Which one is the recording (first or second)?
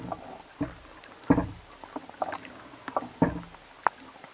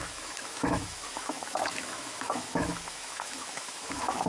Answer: first